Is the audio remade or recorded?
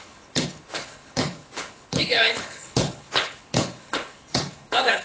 remade